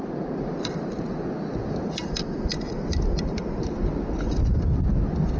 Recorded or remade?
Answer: recorded